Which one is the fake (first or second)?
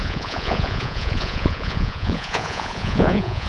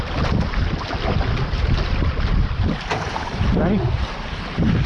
first